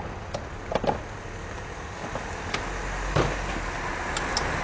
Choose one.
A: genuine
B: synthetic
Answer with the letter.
A